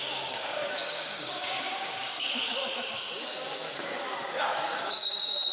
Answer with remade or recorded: remade